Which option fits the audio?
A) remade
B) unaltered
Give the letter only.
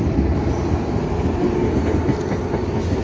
B